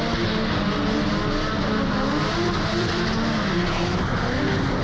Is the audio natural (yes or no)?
yes